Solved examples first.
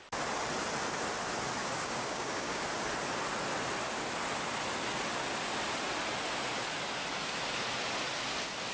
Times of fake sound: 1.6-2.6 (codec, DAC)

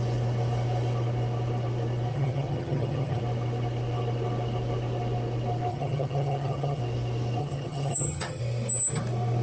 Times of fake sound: 2.1-3.2 (vocoder, HiFi-GAN); 5.7-6.8; 7.4-8.4

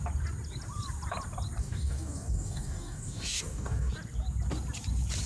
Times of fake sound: 1.6-3.9 (codec, DAC)

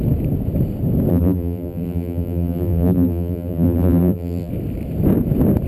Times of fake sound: 1.1-4.5 (vocoder, BigVGAN v2)

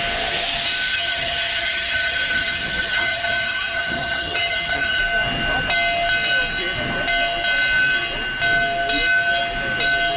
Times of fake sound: 0.9-5.0 (vocoder, HiFi-GAN)

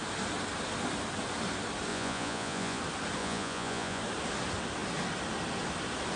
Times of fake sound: 1.9-2.8 (vocoder, Vocos); 3.2-4.0

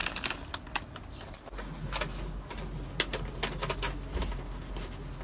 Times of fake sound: none

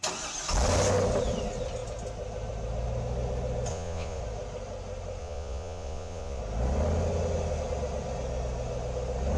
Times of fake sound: 3.7-4.2 (vocoder, Vocos); 5.2-6.4